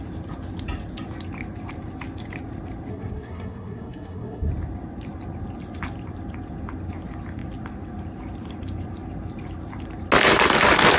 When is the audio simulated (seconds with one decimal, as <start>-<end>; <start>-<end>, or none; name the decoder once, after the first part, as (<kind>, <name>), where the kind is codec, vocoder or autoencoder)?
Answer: 2.9-4.5 (codec, SNAC)